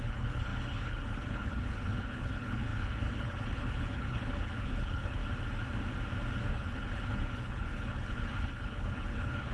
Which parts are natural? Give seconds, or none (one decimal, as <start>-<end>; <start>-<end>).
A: 5.2-6.5